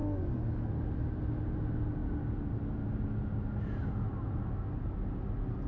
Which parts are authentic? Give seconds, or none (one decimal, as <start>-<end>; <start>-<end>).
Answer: 0.7-5.7